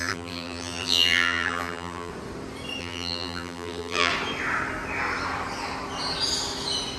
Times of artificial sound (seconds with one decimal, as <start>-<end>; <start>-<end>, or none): 0.0-2.1; 2.8-4.1